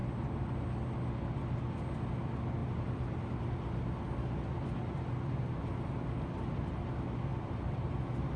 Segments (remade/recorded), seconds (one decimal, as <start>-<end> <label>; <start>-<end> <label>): 0.0-2.6 recorded; 2.6-3.3 remade; 3.3-7.3 recorded; 7.3-8.4 remade

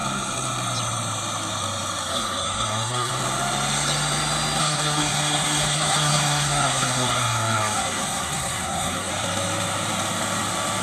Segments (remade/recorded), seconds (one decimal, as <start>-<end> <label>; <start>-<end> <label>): 0.0-2.1 recorded; 2.1-3.1 remade; 3.1-4.6 recorded; 4.6-9.1 remade; 9.1-10.8 recorded

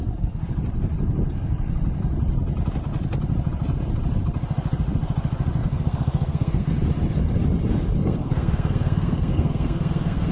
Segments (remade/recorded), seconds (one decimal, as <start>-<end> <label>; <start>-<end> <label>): 0.0-5.6 recorded; 5.6-6.7 remade; 6.7-8.0 recorded; 8.0-10.3 remade

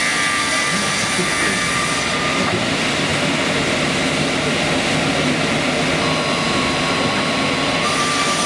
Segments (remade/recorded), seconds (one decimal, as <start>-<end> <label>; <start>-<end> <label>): 0.0-8.5 recorded

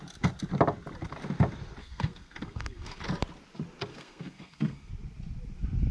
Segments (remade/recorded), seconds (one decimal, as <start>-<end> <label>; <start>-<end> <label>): 0.0-1.8 recorded; 1.8-3.0 remade; 3.0-3.9 recorded; 3.9-4.9 remade; 4.9-5.9 recorded

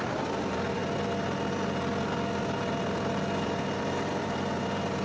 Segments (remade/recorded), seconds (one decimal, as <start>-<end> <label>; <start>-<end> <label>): 0.0-5.0 recorded

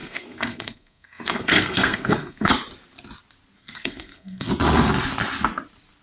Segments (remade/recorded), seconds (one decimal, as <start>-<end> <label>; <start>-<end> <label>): 0.0-2.5 remade; 2.5-3.6 recorded; 3.6-4.5 remade; 4.5-6.0 recorded